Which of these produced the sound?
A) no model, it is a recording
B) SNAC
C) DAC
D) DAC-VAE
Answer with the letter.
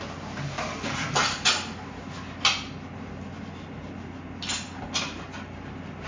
A